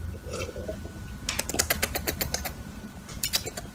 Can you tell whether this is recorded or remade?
remade